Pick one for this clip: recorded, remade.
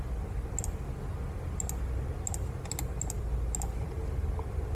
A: recorded